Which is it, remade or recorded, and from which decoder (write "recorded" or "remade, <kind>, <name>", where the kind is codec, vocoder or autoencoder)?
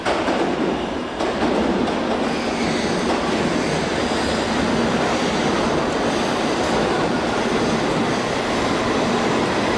recorded